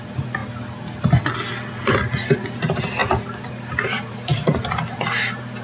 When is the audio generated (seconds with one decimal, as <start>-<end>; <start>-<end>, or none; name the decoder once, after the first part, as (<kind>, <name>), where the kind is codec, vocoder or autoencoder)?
0.0-0.4 (vocoder, BigVGAN v2); 2.6-5.6